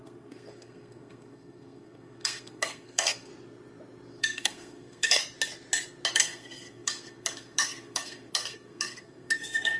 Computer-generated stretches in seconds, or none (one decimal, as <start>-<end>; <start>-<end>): 0.0-3.3; 4.2-5.2; 6.1-9.8